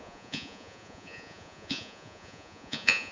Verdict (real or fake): fake